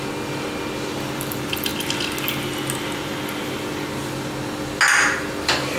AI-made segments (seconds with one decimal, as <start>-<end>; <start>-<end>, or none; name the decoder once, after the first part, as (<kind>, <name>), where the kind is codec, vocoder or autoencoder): 0.0-1.7 (vocoder, BigVGAN v2); 5.2-5.8